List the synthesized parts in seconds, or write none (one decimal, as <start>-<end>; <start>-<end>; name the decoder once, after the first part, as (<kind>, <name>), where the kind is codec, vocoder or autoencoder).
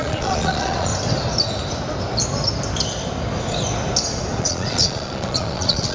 0.0-0.9 (vocoder, Vocos); 4.4-5.9